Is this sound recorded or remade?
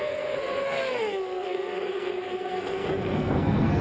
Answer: remade